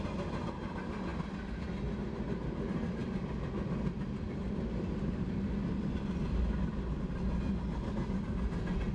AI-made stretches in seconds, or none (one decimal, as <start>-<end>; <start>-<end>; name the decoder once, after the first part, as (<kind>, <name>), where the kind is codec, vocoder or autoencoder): none